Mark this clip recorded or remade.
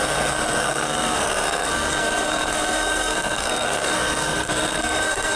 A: remade